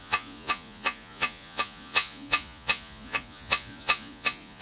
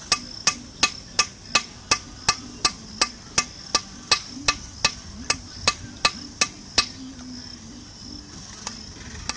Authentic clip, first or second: second